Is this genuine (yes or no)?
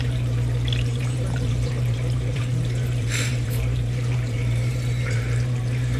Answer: no